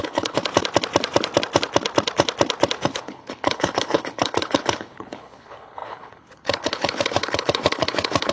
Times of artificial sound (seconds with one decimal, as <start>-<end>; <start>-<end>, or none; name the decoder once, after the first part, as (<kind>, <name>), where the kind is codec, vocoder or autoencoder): 0.0-0.4 (codec, HILCodec); 2.8-8.3